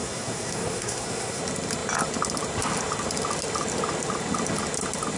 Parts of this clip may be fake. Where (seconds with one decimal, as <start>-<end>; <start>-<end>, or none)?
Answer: 0.0-1.4